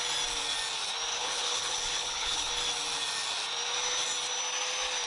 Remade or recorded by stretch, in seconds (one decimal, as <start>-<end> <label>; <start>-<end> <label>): 0.0-1.1 recorded; 1.1-2.5 remade; 2.5-5.1 recorded